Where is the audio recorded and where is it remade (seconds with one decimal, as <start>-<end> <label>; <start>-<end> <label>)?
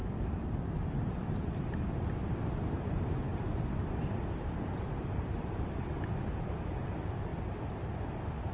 0.0-2.4 remade; 2.4-3.3 recorded; 3.3-6.6 remade; 6.6-8.5 recorded